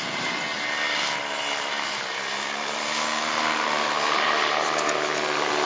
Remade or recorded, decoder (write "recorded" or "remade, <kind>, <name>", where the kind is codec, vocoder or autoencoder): recorded